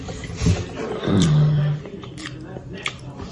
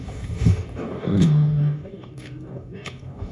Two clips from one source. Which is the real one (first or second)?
first